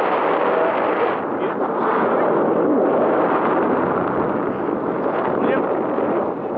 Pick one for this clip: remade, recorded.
recorded